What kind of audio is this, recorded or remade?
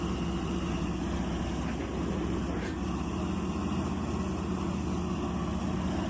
recorded